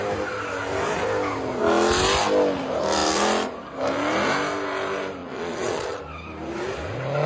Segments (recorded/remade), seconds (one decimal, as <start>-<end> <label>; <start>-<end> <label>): 0.0-5.2 recorded; 5.2-6.0 remade; 6.0-7.3 recorded

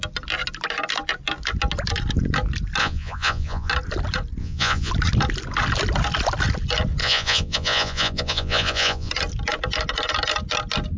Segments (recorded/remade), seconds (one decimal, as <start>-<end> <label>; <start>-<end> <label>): 0.0-2.8 recorded; 2.8-3.7 remade; 3.7-4.4 recorded; 4.4-4.9 remade; 4.9-7.0 recorded; 7.0-9.1 remade; 9.1-11.0 recorded

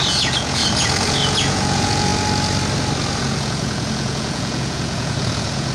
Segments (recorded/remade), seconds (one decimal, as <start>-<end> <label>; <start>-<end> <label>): 0.0-2.1 remade; 2.1-3.2 recorded; 3.2-5.7 remade

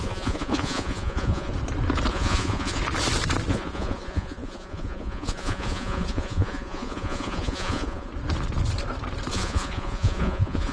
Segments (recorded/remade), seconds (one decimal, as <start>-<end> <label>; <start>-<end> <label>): 0.0-1.5 remade; 1.5-2.1 recorded; 2.1-2.8 remade; 2.8-3.5 recorded; 3.5-8.1 remade; 8.1-9.3 recorded; 9.3-10.7 remade

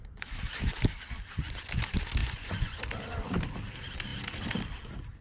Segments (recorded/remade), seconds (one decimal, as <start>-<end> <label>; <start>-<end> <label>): 0.0-2.2 recorded; 2.2-2.8 remade; 2.8-5.2 recorded